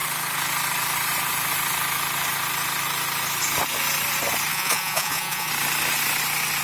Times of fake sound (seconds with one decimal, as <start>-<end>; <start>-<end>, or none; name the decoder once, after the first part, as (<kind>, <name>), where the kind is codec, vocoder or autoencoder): 4.5-5.5 (vocoder, Vocos)